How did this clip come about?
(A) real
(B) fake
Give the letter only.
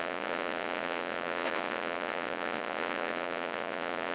B